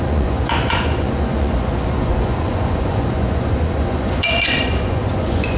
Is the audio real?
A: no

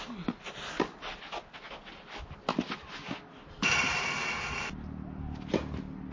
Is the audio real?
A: yes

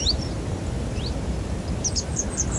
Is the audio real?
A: yes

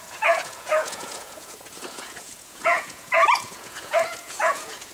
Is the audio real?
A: no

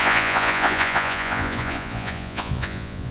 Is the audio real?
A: no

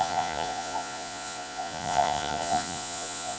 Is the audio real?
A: no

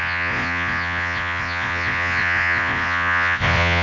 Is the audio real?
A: no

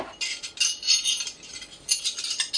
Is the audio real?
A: yes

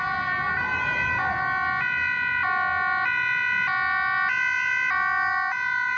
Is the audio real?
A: yes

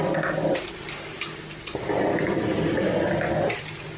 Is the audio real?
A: yes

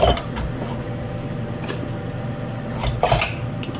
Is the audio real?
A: yes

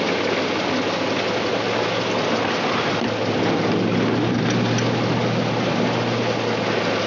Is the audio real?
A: yes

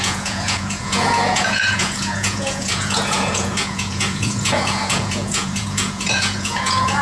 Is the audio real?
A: no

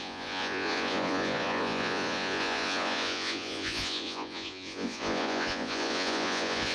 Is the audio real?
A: no